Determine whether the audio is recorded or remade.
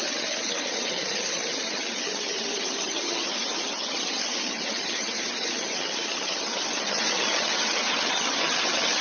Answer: remade